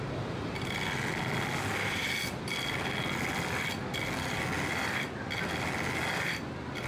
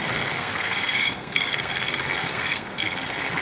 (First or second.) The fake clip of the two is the second